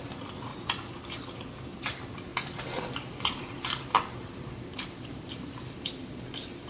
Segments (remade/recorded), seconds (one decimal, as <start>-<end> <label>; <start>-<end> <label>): 0.0-0.5 recorded; 0.5-1.8 remade; 1.8-4.2 recorded; 4.2-5.6 remade; 5.6-6.7 recorded